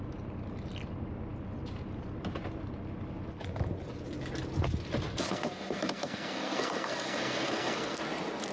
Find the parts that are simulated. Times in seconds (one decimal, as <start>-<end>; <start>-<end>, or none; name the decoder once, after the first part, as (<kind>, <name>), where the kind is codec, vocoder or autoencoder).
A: 5.1-8.0 (codec, SNAC)